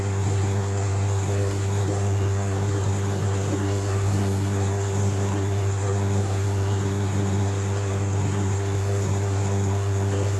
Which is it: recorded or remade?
remade